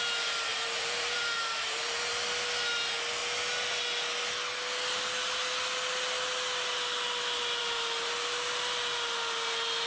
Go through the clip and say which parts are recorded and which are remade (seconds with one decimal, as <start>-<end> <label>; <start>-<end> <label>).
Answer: 0.0-0.5 recorded; 0.5-2.1 remade; 2.1-9.9 recorded